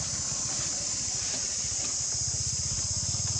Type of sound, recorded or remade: recorded